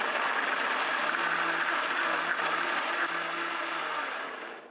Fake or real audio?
real